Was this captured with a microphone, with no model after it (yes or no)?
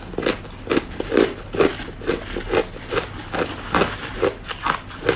yes